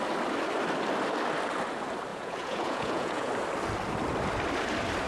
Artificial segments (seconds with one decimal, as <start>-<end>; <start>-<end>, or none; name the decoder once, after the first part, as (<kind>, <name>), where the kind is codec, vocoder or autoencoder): 2.1-3.3 (vocoder, Vocos)